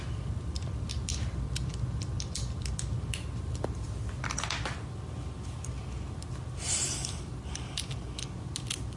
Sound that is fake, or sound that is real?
real